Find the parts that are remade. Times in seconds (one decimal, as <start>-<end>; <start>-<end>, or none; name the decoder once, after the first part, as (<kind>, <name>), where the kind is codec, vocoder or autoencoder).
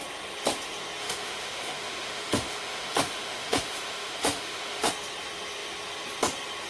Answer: 1.0-4.9 (autoencoder, DAC-VAE)